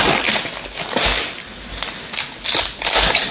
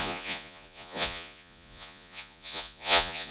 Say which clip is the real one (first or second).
first